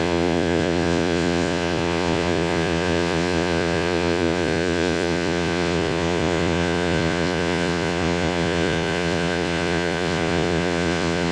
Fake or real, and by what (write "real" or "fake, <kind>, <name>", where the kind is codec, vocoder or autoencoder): fake, vocoder, Vocos